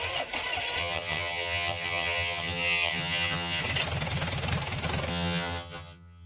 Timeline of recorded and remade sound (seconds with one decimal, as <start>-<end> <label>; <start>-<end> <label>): 0.0-0.8 recorded; 0.8-3.6 remade; 3.6-5.1 recorded; 5.1-6.3 remade